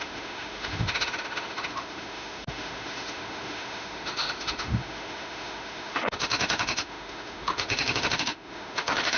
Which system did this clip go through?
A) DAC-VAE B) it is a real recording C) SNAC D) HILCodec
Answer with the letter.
A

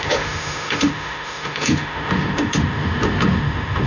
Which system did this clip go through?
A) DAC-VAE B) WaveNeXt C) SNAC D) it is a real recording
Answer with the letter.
A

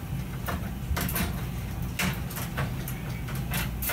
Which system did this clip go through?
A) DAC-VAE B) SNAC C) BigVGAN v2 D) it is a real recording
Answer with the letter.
D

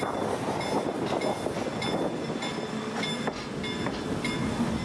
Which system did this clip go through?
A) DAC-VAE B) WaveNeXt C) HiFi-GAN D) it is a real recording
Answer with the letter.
D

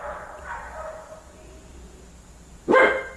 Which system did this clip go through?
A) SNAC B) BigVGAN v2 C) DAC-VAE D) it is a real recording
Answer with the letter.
D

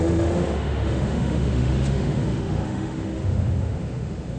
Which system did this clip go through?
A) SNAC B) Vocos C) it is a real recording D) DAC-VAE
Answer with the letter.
D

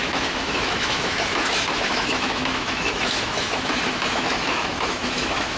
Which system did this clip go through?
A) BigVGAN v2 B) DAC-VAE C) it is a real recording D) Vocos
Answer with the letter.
B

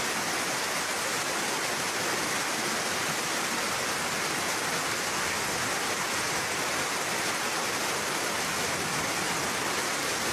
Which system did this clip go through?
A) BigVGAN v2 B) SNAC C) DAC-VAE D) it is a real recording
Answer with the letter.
D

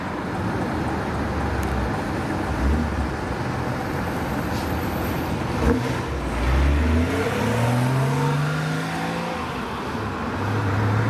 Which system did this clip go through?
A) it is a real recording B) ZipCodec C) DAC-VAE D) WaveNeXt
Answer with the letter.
A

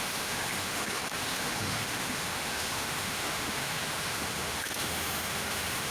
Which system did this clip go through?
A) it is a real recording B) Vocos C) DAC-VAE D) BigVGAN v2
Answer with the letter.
C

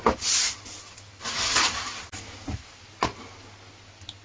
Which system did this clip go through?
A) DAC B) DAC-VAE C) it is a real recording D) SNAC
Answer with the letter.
C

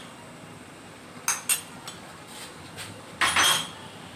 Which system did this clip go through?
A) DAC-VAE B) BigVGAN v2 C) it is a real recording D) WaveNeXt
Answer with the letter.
C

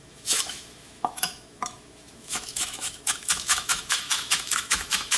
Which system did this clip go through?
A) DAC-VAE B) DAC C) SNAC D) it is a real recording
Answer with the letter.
A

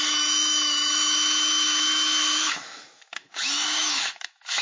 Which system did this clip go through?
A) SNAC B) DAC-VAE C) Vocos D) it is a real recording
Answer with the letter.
B